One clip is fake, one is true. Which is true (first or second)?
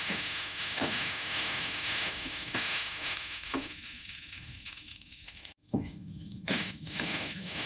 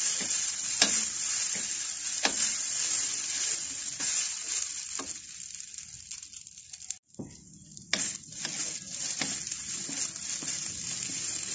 second